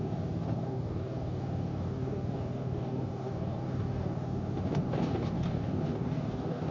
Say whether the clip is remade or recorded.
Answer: remade